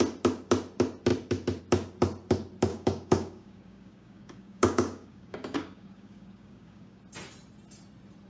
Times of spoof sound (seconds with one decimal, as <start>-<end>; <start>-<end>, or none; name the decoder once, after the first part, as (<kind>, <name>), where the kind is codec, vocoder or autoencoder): 2.7-7.0 (codec, DAC)

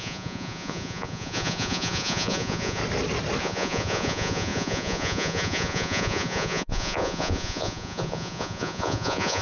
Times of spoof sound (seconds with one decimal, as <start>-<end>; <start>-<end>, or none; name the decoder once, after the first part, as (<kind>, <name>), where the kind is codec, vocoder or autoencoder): 0.0-2.8 (vocoder, Vocos); 3.4-9.4

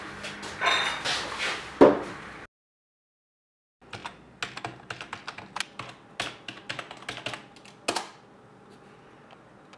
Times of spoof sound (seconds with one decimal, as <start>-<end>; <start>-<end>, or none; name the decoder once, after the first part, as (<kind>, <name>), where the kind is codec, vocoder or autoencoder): none

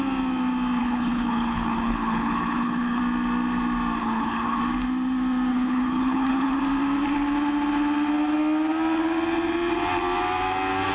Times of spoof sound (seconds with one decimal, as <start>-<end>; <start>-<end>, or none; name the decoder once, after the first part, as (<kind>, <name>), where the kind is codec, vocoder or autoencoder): 0.8-3.0 (codec, HILCodec); 4.0-4.6; 5.5-6.6

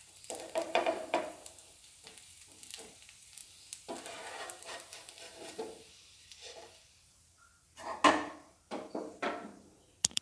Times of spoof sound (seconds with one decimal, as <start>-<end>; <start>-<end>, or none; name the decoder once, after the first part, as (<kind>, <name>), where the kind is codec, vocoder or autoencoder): 0.0-3.4 (vocoder, BigVGAN v2); 4.0-7.5; 8.1-10.2

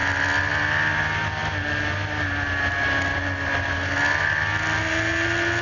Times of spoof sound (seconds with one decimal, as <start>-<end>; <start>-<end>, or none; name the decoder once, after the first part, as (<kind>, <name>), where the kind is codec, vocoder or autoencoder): none

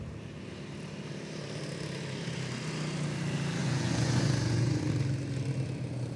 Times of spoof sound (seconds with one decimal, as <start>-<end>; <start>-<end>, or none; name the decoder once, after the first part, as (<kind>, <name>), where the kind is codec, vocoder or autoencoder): 3.6-4.8 (vocoder, Vocos)

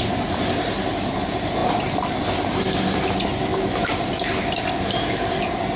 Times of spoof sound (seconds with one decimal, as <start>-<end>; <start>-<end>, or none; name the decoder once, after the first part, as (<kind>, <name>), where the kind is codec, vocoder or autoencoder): none